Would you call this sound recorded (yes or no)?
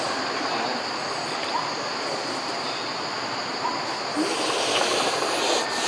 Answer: yes